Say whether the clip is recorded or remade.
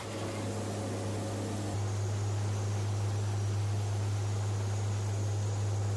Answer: recorded